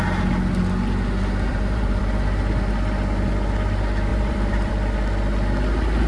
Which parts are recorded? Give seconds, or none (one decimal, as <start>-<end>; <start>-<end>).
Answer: 0.0-1.5; 2.0-4.1; 4.7-6.1